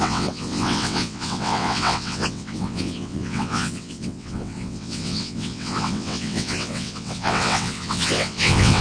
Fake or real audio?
fake